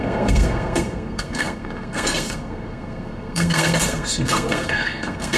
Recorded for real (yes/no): no